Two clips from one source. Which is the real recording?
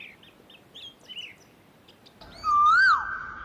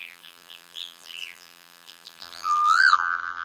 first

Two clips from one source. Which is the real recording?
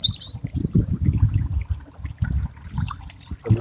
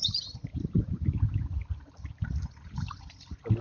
first